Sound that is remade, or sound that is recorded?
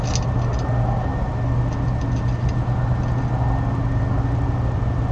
recorded